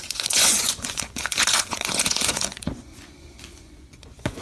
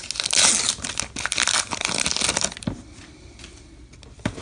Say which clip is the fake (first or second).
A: first